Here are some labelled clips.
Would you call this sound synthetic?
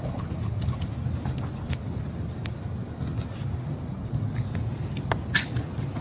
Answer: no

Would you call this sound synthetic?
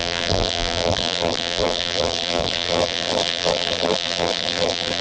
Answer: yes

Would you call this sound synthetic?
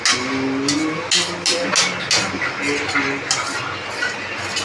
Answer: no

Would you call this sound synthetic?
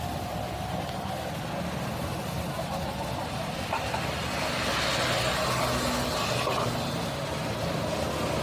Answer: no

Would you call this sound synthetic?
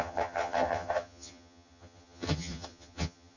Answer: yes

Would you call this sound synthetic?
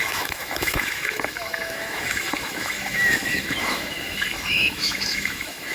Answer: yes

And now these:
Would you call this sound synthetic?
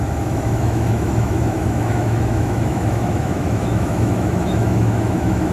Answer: yes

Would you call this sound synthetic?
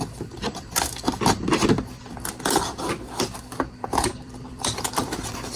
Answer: yes